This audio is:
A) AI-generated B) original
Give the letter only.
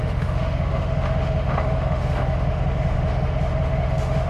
A